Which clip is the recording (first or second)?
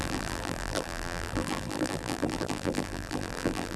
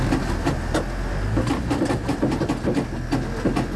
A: second